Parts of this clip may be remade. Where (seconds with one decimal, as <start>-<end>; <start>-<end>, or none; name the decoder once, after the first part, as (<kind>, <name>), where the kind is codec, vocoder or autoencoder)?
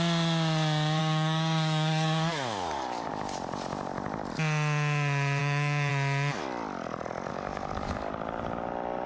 1.0-3.1 (codec, DAC); 5.4-5.9; 7.3-8.1